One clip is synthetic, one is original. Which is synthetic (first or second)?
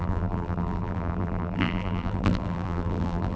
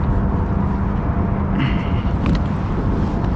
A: first